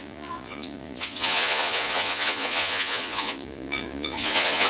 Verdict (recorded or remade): remade